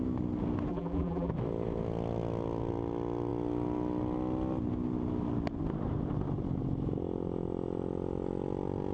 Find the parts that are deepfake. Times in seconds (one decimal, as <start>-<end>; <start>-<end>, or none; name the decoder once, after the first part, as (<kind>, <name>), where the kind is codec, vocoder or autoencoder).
0.7-1.3 (vocoder, BigVGAN v2)